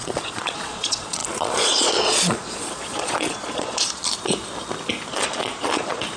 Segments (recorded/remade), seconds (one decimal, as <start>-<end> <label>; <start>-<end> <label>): 0.0-4.0 remade; 4.0-5.1 recorded; 5.1-6.2 remade